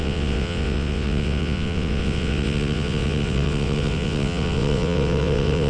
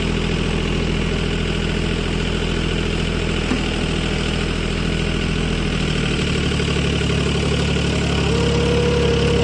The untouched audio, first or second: second